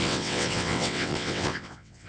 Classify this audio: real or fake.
fake